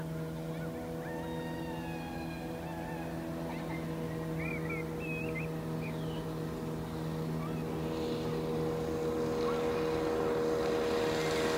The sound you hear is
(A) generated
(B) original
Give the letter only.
B